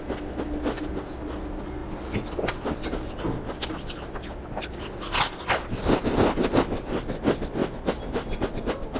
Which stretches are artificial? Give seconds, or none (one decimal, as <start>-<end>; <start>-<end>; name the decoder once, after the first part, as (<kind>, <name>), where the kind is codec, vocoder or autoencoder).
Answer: none